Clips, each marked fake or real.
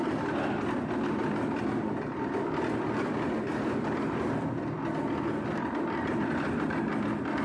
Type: real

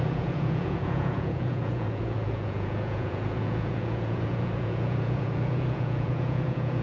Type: fake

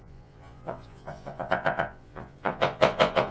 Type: fake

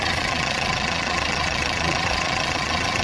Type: fake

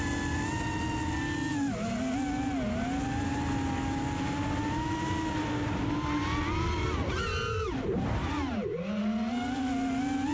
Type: real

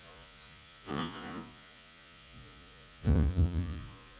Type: fake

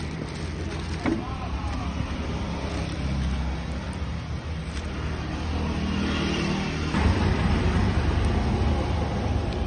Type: real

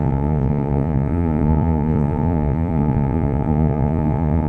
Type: fake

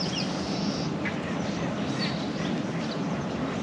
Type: real